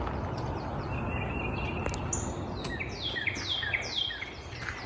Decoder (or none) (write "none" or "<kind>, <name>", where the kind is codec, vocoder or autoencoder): none